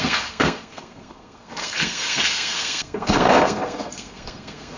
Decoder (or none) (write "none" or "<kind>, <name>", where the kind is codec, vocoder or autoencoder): codec, SNAC